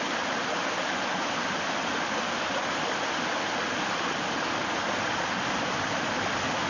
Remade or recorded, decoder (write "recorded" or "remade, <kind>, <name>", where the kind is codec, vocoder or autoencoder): recorded